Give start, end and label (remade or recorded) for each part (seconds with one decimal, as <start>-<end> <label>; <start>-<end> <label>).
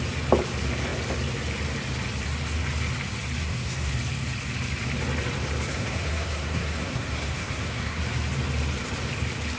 0.0-3.4 recorded; 3.4-3.9 remade; 3.9-5.7 recorded; 5.7-8.0 remade; 8.0-9.6 recorded